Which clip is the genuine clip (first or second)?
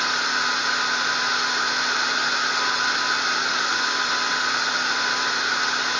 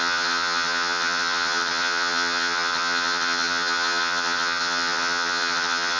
first